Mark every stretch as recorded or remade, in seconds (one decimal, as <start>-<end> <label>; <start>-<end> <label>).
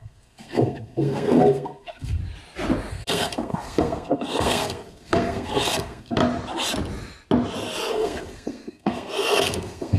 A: 0.0-2.2 remade; 2.2-2.9 recorded; 2.9-6.2 remade; 6.2-7.9 recorded; 7.9-10.0 remade